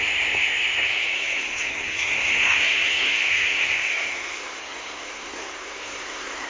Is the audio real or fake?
fake